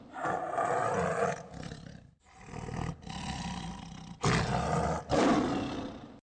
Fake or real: real